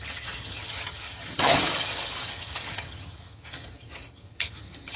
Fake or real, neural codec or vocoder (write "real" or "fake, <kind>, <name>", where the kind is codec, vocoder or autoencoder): fake, vocoder, HiFi-GAN